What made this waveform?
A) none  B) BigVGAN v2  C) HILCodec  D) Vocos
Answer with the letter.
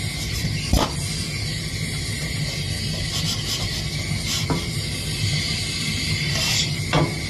A